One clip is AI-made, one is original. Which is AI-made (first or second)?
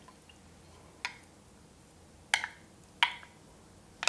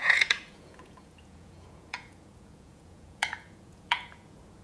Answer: second